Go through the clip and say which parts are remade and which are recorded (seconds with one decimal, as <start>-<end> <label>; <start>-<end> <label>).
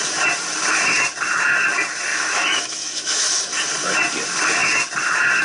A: 0.0-2.1 recorded; 2.1-3.4 remade; 3.4-5.4 recorded